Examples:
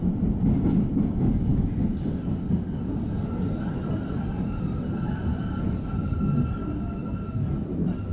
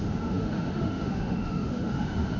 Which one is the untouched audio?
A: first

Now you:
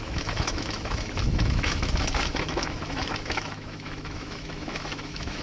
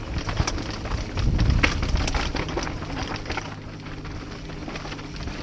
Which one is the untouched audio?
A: second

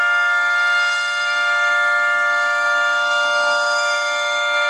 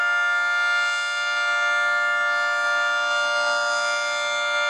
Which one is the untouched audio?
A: second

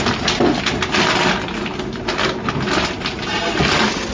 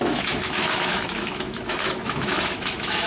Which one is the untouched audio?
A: first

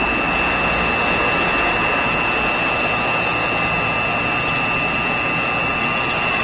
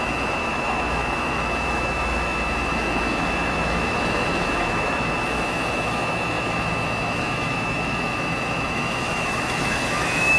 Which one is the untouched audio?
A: first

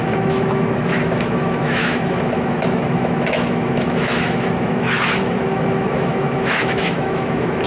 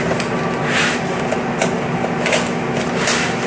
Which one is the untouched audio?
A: second